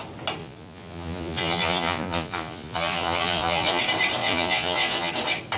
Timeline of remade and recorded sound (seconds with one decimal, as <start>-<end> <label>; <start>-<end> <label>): 0.0-0.4 recorded; 0.4-3.8 remade; 3.8-4.2 recorded; 4.2-5.1 remade; 5.1-5.6 recorded